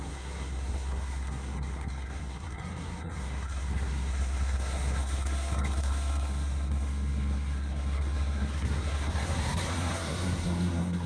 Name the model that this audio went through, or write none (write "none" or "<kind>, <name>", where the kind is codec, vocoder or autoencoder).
codec, SNAC